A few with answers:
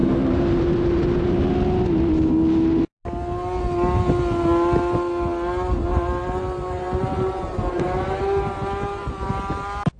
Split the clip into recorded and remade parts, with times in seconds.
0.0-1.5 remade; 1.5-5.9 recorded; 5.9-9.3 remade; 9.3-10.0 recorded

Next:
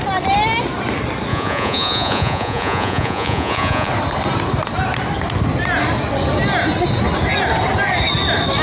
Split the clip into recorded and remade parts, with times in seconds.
0.0-1.3 recorded; 1.3-3.9 remade; 3.9-8.6 recorded

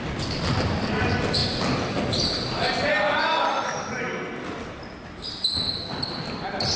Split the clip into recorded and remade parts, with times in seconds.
0.0-6.8 recorded

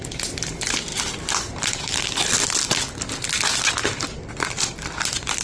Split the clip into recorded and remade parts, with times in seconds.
0.0-5.4 recorded

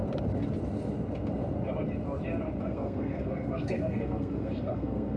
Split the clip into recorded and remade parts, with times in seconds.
0.0-2.6 recorded; 2.6-5.2 remade